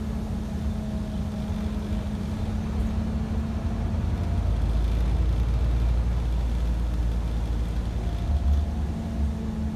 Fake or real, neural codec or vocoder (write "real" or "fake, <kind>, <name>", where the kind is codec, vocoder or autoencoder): real